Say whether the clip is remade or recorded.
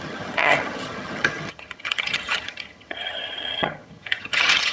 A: remade